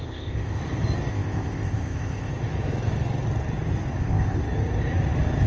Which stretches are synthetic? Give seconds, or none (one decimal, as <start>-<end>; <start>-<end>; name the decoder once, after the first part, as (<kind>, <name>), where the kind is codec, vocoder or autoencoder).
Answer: 0.0-0.6 (codec, ZipCodec); 1.1-2.3; 4.0-4.4